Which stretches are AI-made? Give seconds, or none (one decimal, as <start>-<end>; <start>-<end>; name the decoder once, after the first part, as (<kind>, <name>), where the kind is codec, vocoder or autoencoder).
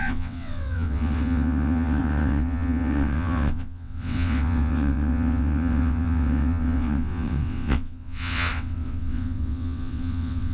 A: 0.0-10.5 (vocoder, WaveNeXt)